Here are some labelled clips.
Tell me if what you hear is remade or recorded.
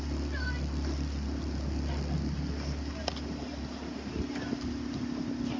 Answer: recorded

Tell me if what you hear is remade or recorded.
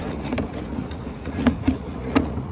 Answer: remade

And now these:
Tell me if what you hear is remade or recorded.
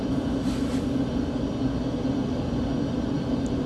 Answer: recorded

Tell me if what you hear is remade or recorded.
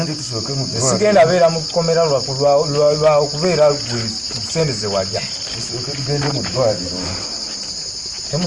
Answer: recorded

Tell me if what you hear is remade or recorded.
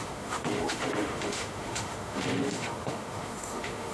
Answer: remade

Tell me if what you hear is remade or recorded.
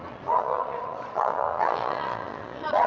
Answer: remade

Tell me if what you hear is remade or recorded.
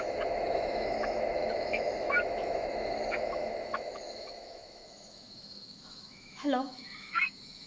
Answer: remade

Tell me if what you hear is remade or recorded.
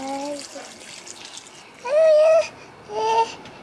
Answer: recorded